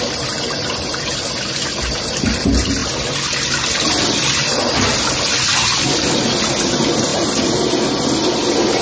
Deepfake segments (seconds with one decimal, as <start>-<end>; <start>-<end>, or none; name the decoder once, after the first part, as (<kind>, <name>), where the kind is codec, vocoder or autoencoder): none